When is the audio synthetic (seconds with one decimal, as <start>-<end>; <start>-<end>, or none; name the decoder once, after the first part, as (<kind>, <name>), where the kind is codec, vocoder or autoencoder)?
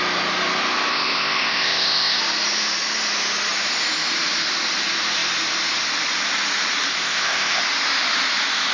0.9-2.2 (codec, ZipCodec); 6.9-7.6